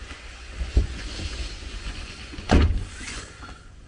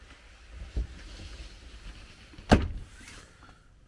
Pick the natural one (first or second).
second